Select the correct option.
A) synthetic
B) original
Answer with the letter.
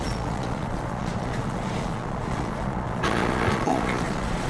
A